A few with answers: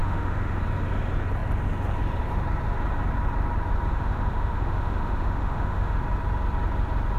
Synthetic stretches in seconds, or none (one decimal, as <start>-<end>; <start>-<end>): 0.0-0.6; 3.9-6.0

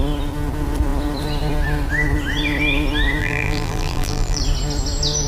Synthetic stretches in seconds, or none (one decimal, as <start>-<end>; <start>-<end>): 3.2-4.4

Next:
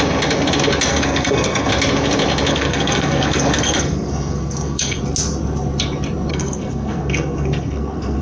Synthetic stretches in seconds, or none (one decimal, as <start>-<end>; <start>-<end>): 0.9-1.7; 2.5-5.0; 6.3-8.2